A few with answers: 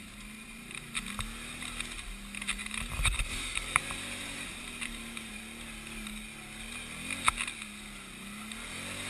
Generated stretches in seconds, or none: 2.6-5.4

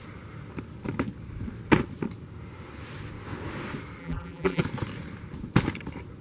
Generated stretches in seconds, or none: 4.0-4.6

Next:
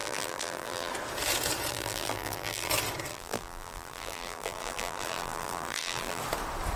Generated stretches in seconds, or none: 0.0-0.9; 1.7-2.7; 3.1-6.2

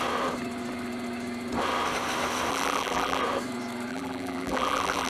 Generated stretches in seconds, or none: 2.5-3.2; 3.9-5.1